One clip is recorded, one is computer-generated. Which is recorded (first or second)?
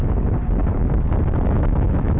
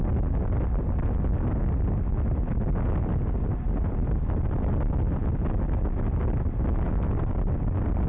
second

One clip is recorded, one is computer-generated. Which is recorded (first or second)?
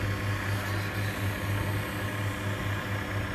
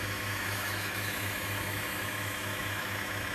first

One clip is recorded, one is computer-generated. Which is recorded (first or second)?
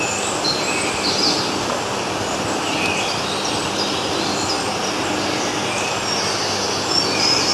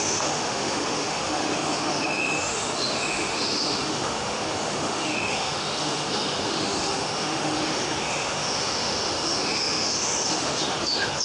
first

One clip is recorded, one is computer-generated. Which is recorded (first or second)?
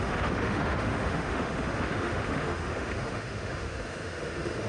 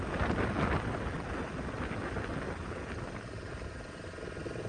second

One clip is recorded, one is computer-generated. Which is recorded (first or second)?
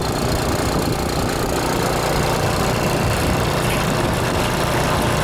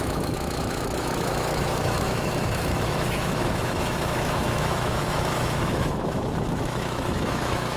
first